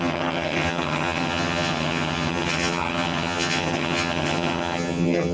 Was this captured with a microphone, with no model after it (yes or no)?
no